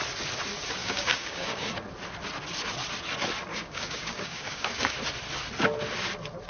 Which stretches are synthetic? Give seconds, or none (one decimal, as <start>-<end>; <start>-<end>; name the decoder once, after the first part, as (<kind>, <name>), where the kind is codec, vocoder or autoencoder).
0.8-1.7 (codec, DAC); 3.5-4.9